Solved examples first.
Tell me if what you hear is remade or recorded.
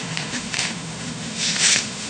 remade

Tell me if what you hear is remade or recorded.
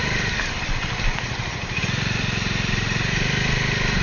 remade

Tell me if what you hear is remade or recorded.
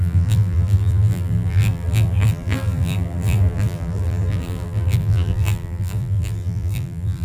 remade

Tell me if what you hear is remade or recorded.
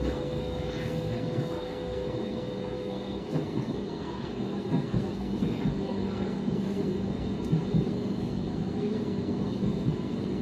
remade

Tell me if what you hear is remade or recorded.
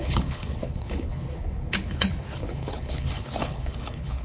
remade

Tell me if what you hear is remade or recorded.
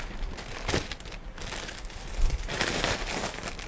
recorded